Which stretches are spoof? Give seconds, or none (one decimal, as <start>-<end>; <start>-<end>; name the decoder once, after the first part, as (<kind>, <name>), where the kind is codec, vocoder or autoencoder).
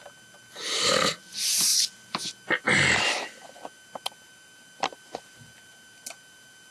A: none